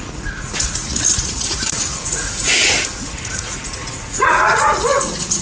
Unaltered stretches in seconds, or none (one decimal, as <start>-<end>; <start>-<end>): 2.6-3.1